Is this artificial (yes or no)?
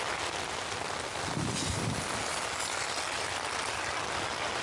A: no